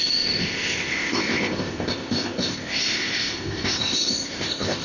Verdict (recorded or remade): remade